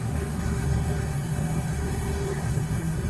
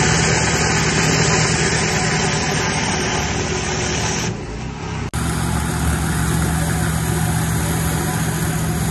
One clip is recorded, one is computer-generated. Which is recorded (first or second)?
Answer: second